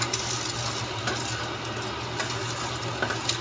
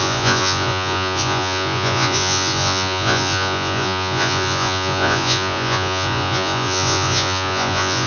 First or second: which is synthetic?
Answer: second